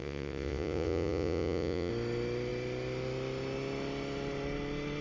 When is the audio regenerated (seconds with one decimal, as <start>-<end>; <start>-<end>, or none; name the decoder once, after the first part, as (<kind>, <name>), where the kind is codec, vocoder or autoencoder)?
0.0-1.9 (vocoder, Vocos)